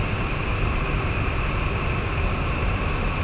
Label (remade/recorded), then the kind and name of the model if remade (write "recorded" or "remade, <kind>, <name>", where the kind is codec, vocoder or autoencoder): recorded